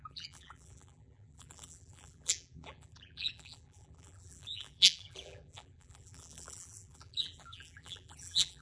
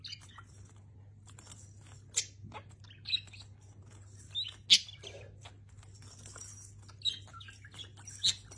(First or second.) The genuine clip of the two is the second